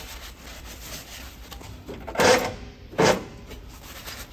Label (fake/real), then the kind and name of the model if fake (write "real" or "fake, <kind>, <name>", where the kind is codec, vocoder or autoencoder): real